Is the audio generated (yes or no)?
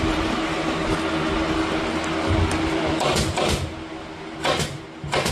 no